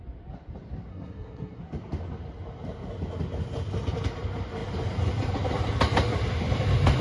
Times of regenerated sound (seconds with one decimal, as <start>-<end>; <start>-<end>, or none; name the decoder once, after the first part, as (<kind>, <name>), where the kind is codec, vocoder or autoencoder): 0.9-1.6 (codec, SNAC)